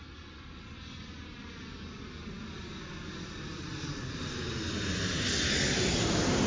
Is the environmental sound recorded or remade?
recorded